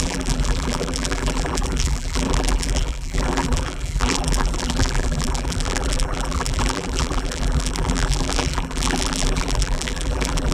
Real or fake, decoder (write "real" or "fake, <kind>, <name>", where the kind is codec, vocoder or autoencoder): fake, vocoder, BigVGAN v2